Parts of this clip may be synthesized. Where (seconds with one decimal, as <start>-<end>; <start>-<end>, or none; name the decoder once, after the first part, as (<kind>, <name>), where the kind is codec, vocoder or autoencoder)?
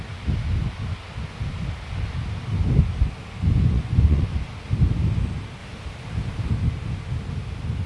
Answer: 3.5-4.5 (vocoder, Vocos)